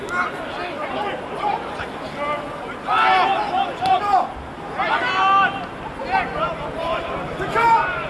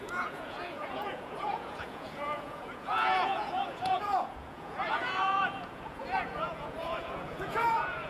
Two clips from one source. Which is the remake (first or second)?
second